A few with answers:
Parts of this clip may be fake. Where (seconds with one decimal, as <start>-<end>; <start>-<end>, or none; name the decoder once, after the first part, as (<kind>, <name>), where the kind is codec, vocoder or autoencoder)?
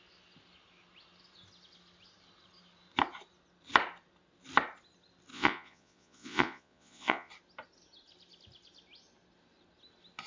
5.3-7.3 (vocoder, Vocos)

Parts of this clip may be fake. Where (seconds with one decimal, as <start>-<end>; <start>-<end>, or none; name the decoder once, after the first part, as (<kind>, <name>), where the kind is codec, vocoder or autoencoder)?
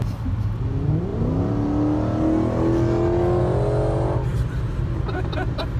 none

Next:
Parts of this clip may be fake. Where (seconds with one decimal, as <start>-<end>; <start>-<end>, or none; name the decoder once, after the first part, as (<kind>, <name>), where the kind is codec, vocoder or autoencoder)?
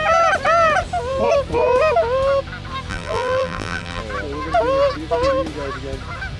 2.9-4.0 (vocoder, BigVGAN v2)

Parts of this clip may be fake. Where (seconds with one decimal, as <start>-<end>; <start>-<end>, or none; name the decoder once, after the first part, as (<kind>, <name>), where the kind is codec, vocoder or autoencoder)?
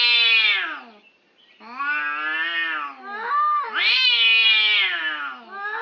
none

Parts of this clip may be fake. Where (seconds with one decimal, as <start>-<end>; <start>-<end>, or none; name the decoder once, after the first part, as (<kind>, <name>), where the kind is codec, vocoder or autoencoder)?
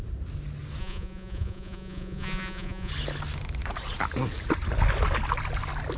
0.8-2.9 (vocoder, Vocos)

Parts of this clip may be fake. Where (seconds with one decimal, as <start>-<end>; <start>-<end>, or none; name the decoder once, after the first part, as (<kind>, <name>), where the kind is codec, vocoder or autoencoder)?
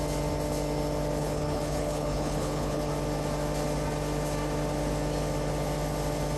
1.2-2.9 (codec, HILCodec)